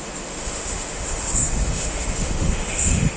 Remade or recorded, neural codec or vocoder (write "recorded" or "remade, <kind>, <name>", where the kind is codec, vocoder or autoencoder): remade, autoencoder, DAC-VAE